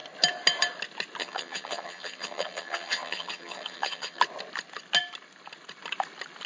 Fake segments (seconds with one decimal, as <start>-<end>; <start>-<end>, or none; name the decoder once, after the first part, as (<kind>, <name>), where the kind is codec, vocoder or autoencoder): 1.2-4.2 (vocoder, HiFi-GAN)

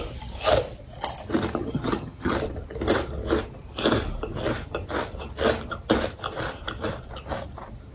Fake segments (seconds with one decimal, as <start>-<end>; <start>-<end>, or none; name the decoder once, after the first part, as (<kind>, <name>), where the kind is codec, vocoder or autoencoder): 1.6-2.3 (vocoder, HiFi-GAN)

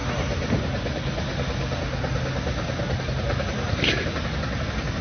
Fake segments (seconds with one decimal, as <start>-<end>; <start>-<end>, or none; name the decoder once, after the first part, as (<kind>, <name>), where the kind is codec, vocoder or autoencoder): none

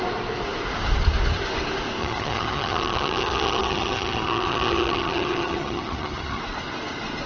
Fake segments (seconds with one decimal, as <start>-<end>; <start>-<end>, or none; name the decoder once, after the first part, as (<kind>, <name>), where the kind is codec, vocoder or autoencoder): 2.0-6.4 (vocoder, HiFi-GAN)

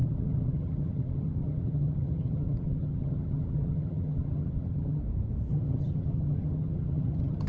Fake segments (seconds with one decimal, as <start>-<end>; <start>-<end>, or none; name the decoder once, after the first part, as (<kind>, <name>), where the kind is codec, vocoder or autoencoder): 0.0-5.0 (vocoder, HiFi-GAN); 5.5-7.5

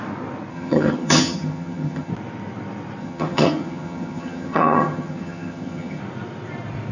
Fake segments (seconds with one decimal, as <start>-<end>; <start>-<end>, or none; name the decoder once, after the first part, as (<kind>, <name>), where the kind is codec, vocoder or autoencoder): 0.5-2.1 (vocoder, HiFi-GAN); 3.0-6.0